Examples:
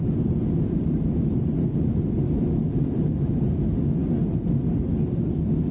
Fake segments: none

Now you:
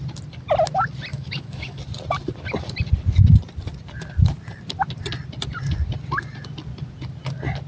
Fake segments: 1.1-1.8 (autoencoder, DAC-VAE)

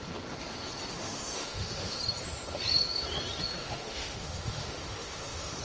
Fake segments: 0.9-2.0 (autoencoder, DAC-VAE); 3.6-5.6

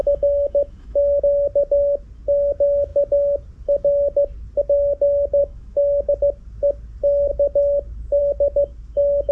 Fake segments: 0.0-1.2 (autoencoder, DAC-VAE); 5.4-6.1

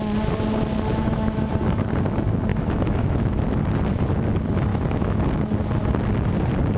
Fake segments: 0.9-1.5 (autoencoder, DAC-VAE); 2.5-3.4; 4.7-5.2

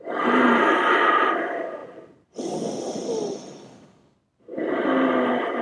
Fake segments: none

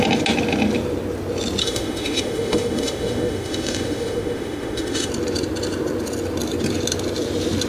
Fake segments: 1.6-5.1 (autoencoder, DAC-VAE)